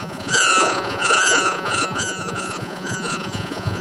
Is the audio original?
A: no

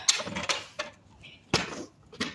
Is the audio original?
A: yes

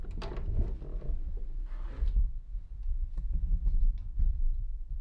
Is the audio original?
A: yes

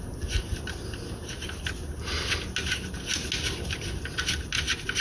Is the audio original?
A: yes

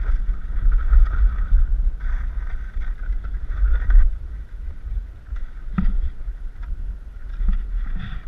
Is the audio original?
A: yes